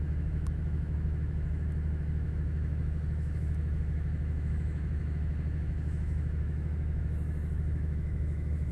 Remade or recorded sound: remade